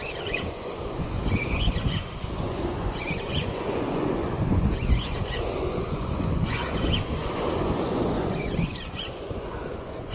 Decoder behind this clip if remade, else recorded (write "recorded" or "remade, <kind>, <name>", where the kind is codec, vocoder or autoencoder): remade, vocoder, Vocos